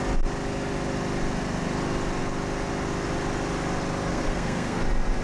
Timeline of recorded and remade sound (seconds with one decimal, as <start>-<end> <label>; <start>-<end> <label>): 0.0-4.1 recorded; 4.1-4.8 remade; 4.8-5.2 recorded